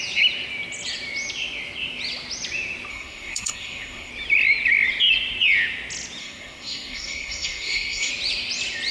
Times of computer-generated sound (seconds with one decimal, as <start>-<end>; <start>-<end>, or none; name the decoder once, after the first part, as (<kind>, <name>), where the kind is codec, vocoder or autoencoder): 2.9-4.1 (codec, SNAC); 6.2-8.1